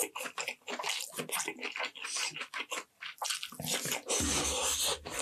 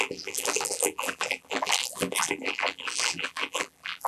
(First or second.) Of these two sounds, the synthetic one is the second